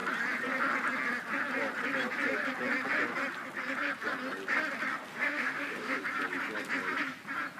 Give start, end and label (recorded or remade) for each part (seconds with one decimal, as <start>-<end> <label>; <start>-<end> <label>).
0.0-5.1 recorded; 5.1-6.0 remade; 6.0-7.6 recorded